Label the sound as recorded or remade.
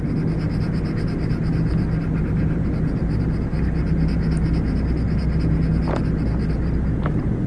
recorded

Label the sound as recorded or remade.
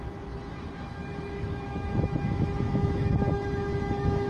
remade